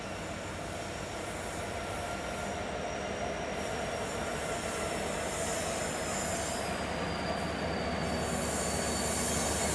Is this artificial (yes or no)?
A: no